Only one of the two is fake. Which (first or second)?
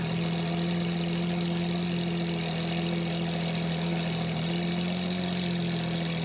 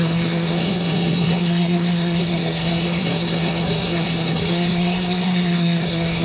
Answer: second